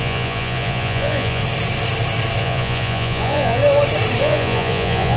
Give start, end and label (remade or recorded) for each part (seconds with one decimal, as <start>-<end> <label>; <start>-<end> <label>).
0.0-1.4 remade; 1.4-2.4 recorded; 2.4-3.6 remade; 3.6-4.2 recorded; 4.2-5.2 remade